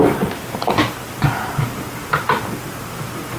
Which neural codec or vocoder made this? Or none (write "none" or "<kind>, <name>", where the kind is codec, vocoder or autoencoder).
none